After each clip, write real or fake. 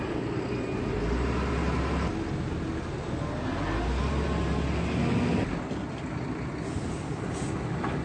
real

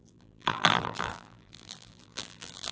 fake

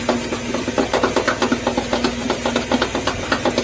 real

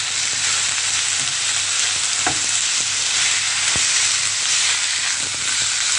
real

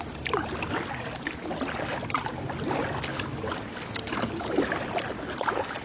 real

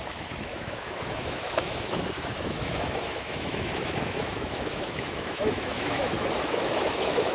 fake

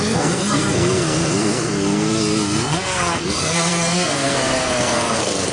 fake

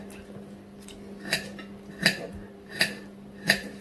real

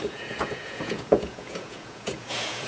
fake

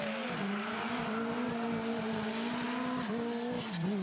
real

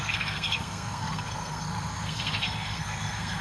fake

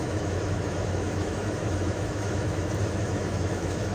fake